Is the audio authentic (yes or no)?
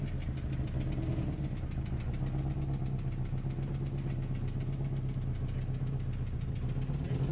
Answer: yes